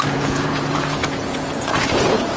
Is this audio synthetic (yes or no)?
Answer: yes